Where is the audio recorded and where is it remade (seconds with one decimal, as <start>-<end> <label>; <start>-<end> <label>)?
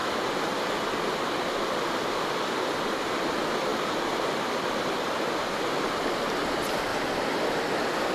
0.0-8.1 recorded